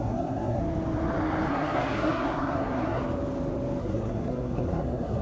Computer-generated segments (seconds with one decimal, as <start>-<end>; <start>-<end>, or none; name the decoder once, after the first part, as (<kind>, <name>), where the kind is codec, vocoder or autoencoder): 0.0-0.6 (codec, SNAC); 1.5-3.0; 3.8-5.2